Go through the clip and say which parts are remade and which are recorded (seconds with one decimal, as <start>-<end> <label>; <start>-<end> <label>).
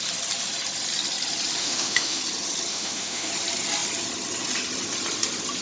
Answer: 0.0-1.6 recorded; 1.6-2.2 remade; 2.2-2.7 recorded; 2.7-3.3 remade; 3.3-5.6 recorded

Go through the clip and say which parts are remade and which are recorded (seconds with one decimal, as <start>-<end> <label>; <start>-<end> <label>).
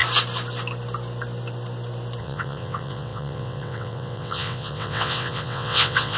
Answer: 0.0-2.2 recorded; 2.2-6.2 remade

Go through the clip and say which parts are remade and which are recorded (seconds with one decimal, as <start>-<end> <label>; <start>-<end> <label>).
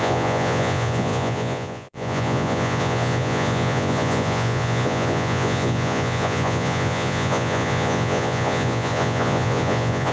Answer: 0.0-10.1 remade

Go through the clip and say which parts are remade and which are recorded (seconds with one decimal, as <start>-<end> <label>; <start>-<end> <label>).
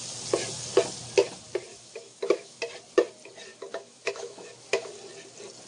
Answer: 0.0-1.7 recorded; 1.7-2.6 remade; 2.6-3.5 recorded; 3.5-4.9 remade; 4.9-5.7 recorded